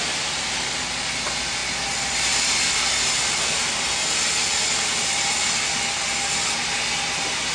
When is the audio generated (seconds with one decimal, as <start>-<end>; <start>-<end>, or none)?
none